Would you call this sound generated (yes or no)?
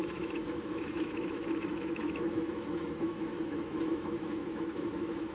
yes